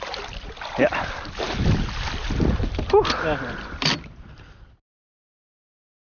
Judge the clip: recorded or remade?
recorded